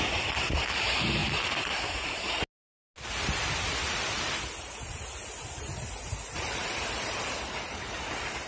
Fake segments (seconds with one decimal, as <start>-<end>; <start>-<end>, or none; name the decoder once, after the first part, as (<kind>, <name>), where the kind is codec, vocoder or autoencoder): none